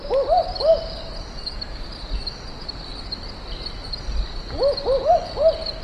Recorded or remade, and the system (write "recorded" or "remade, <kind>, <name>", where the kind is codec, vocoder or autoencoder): recorded